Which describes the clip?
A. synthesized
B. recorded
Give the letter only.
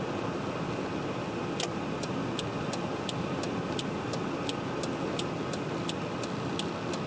B